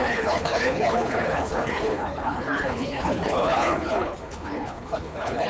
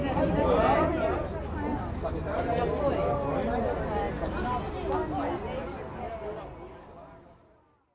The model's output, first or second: first